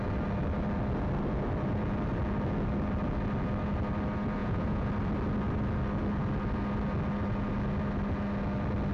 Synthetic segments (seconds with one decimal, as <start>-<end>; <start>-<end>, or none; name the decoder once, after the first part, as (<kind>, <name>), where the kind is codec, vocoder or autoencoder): 4.4-4.9 (vocoder, Vocos)